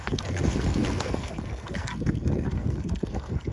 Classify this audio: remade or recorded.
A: remade